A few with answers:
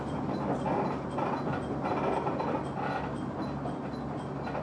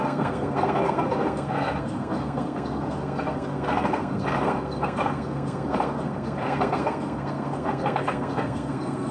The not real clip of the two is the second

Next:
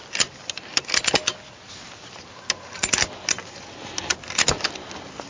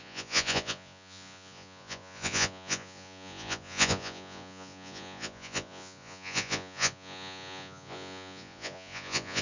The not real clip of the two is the second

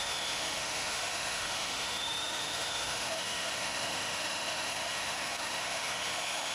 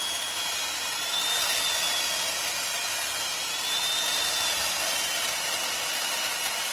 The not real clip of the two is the first